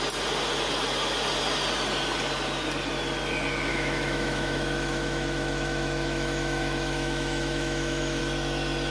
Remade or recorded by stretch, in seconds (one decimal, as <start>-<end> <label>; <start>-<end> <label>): 0.0-3.7 recorded; 3.7-8.2 remade; 8.2-8.9 recorded